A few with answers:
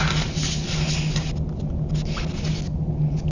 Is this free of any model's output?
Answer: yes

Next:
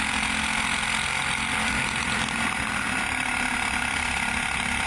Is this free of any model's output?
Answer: yes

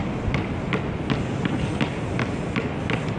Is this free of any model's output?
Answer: yes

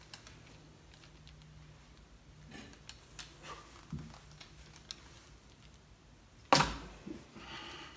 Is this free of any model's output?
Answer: yes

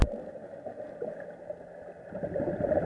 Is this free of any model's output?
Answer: yes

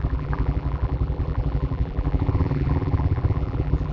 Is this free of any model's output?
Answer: no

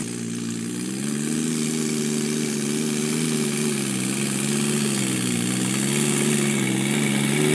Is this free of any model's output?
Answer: yes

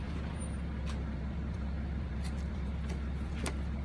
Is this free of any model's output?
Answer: no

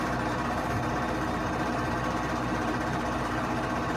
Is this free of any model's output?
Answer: no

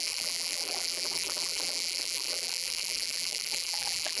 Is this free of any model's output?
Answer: no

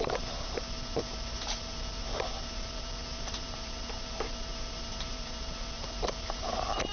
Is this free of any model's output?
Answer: no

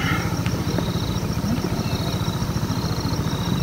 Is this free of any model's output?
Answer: no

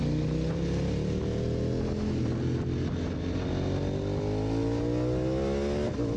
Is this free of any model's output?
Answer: yes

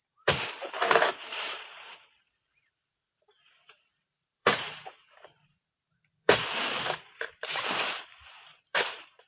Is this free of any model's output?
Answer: no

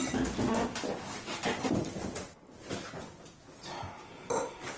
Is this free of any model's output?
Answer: yes